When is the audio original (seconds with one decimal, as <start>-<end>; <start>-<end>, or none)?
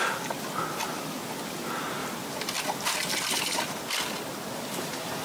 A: 0.0-5.2